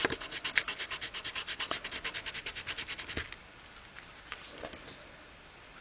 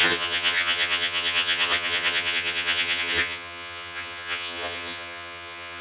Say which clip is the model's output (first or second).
second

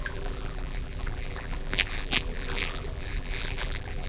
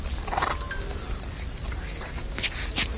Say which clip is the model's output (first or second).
first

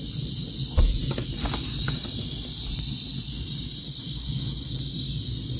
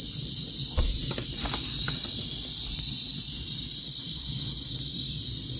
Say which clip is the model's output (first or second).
second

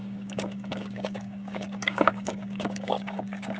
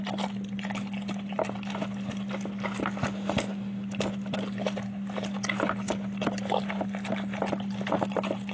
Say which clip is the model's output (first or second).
first